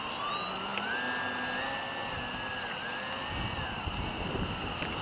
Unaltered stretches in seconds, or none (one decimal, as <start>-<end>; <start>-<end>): 0.0-5.0